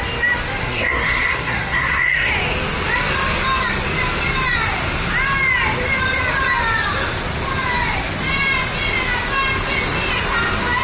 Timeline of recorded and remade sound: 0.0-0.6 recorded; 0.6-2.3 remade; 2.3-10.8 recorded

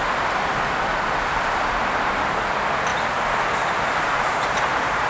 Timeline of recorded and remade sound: 0.0-5.1 recorded

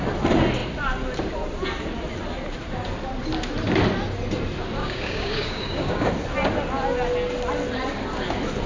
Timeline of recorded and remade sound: 0.0-4.8 recorded; 4.8-6.1 remade; 6.1-8.7 recorded

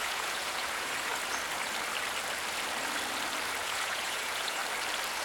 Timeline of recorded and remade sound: 0.0-1.1 remade; 1.1-3.6 recorded; 3.6-4.6 remade; 4.6-5.2 recorded